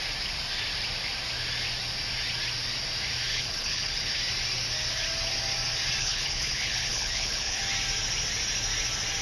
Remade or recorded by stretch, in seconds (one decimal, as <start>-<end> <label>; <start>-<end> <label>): 0.0-3.3 recorded; 3.3-4.1 remade; 4.1-6.0 recorded; 6.0-7.6 remade; 7.6-9.2 recorded